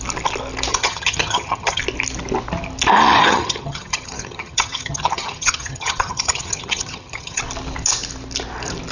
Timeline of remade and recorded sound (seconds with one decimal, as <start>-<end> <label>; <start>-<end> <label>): 0.0-0.7 recorded; 0.7-1.8 remade; 1.8-3.3 recorded; 3.3-7.4 remade; 7.4-8.9 recorded